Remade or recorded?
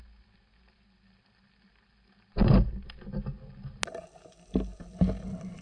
recorded